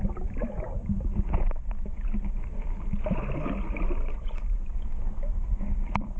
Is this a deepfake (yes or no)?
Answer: no